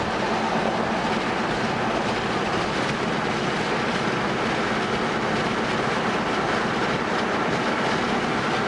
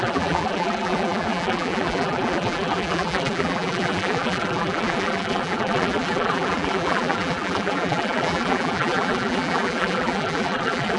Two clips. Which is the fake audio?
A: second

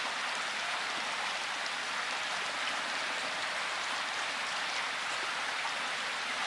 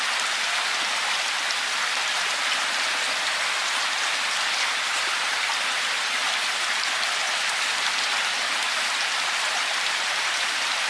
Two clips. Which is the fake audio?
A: second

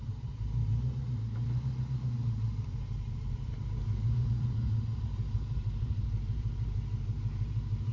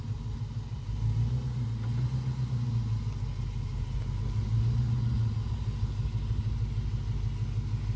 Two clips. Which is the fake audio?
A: first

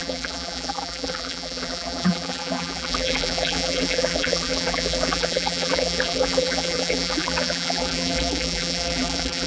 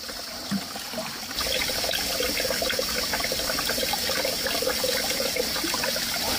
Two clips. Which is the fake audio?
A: first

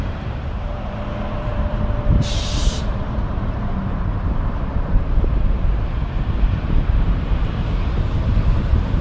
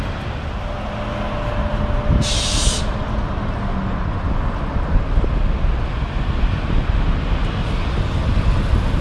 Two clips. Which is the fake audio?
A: first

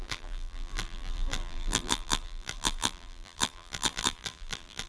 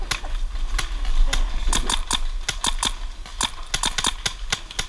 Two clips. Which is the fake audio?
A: first